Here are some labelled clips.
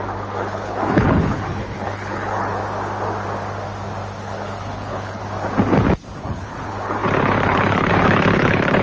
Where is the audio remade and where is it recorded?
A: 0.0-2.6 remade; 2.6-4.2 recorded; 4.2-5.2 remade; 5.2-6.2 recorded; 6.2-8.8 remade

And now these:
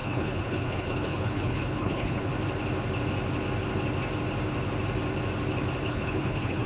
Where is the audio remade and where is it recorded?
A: 0.0-2.3 remade; 2.3-5.9 recorded; 5.9-6.7 remade

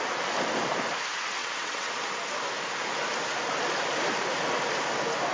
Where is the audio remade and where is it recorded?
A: 0.0-1.4 recorded; 1.4-1.9 remade; 1.9-5.3 recorded

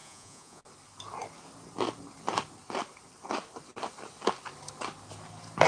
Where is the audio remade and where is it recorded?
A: 0.0-0.6 remade; 0.6-5.7 recorded

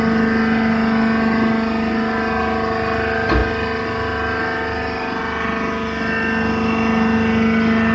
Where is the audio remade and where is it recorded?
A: 0.0-7.9 recorded

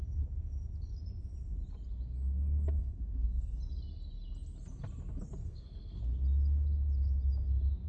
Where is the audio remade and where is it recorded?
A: 0.0-2.8 recorded; 2.8-3.6 remade; 3.6-5.4 recorded; 5.4-6.0 remade; 6.0-7.9 recorded